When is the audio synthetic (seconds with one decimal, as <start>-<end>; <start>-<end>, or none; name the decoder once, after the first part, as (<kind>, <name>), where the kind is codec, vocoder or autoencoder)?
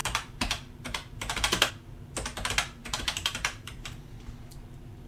0.0-1.7 (vocoder, BigVGAN v2); 2.8-4.2